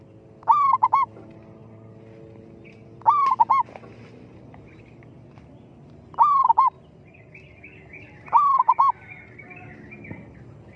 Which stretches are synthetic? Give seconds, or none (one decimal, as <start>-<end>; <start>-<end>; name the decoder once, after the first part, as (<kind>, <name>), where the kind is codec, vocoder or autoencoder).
none